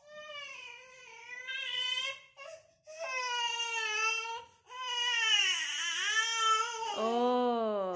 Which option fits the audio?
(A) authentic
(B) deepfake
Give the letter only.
A